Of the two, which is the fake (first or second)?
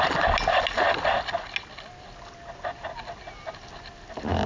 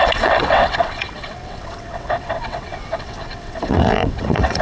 second